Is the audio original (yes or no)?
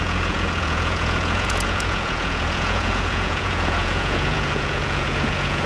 no